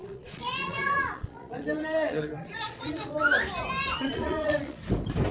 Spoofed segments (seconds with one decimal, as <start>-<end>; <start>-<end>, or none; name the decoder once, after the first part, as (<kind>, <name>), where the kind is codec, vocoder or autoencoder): 0.0-3.2 (vocoder, Vocos); 4.0-4.8